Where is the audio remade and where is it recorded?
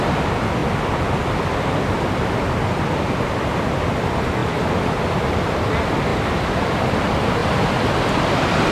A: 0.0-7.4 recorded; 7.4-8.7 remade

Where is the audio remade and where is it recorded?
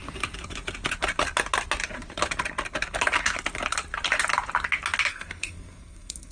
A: 0.0-5.1 recorded; 5.1-6.3 remade